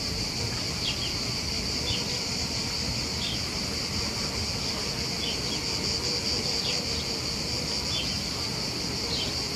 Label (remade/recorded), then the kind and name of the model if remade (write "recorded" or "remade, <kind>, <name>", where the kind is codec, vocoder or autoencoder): recorded